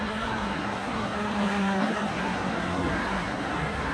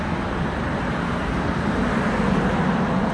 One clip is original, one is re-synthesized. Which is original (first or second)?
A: second